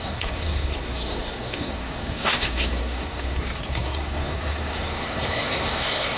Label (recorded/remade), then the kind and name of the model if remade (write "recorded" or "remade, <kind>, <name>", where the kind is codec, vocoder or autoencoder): remade, codec, SNAC